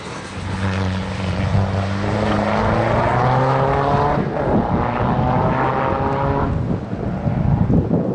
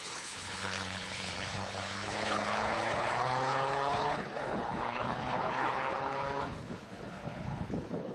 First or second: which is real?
first